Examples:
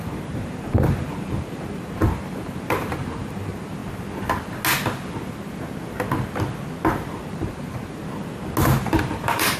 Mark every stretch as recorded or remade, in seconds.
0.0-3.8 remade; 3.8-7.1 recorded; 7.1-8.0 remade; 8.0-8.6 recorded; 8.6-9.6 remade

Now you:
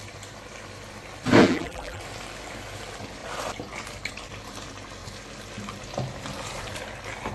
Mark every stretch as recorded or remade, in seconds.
0.0-1.4 recorded; 1.4-2.0 remade; 2.0-7.3 recorded

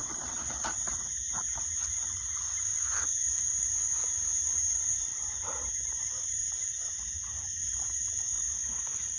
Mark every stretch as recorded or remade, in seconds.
0.0-9.2 remade

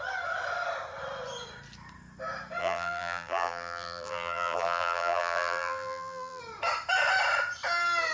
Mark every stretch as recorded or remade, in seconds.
0.0-2.6 recorded; 2.6-6.4 remade; 6.4-8.1 recorded

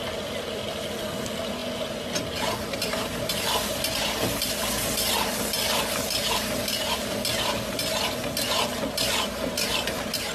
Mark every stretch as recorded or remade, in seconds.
0.0-10.3 recorded